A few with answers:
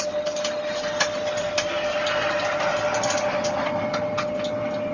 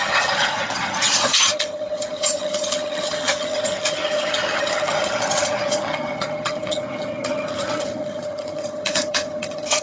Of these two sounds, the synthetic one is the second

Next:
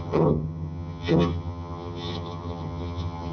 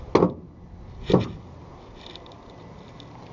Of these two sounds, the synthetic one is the first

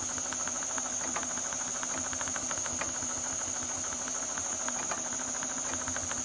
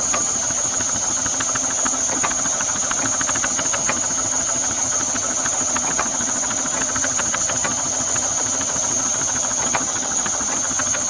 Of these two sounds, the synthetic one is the second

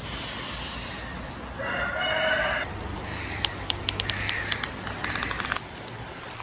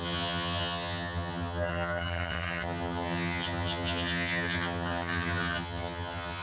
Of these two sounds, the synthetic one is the second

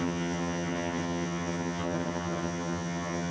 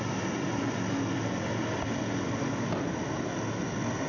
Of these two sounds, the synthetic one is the first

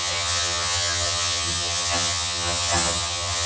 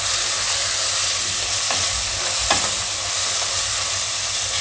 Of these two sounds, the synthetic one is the first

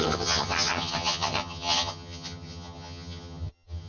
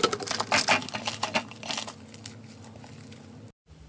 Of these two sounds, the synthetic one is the first